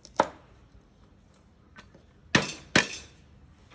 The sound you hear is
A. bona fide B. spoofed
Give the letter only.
A